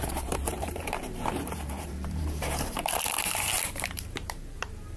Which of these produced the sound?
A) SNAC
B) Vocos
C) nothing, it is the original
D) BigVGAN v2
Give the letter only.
D